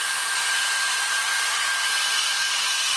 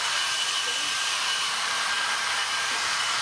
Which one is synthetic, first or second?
second